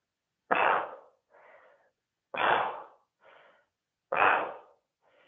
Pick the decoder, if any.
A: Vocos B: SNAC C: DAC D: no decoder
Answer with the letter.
A